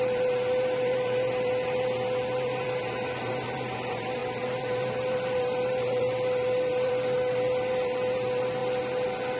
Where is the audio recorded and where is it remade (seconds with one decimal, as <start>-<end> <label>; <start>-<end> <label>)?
0.0-8.6 remade; 8.6-9.4 recorded